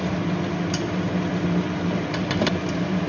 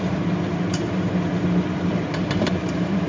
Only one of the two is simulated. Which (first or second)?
second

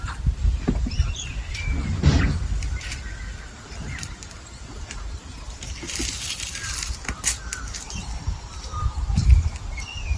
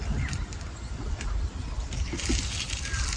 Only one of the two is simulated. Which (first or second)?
first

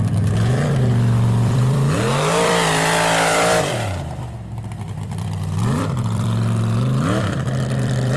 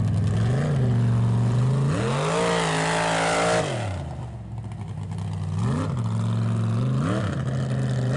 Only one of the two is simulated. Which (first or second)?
first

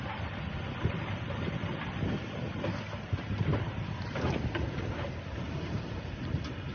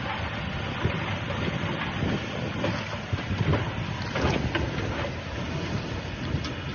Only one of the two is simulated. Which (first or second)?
first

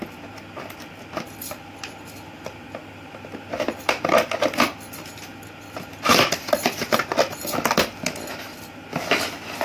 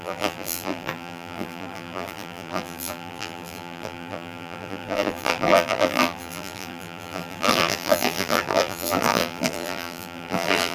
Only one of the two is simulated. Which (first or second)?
second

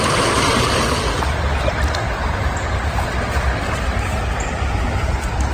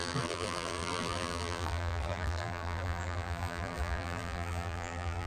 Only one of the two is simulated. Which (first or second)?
second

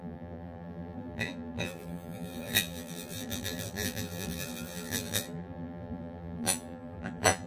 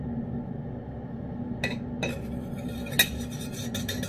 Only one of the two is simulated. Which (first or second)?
first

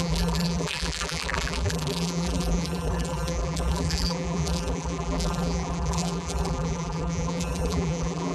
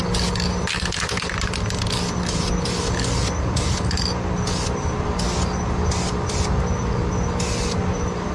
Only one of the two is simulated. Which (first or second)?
first